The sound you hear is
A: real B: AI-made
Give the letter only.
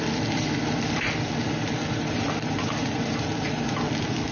B